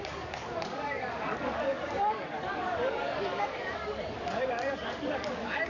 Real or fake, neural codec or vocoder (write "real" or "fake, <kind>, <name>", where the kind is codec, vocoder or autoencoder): fake, codec, DAC